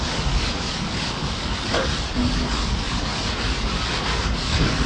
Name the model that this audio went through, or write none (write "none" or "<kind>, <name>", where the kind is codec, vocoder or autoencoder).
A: codec, DAC